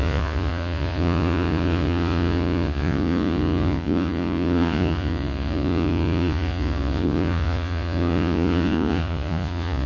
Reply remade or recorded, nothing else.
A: remade